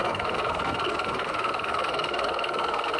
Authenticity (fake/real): fake